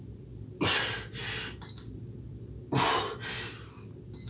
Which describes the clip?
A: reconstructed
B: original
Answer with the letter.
B